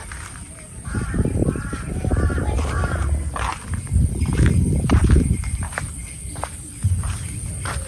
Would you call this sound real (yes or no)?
no